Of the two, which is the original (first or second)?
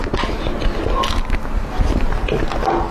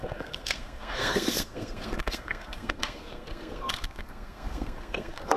first